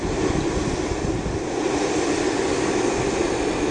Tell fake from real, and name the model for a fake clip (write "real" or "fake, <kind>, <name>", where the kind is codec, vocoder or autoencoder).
real